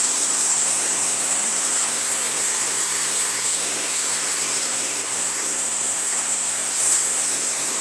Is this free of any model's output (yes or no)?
no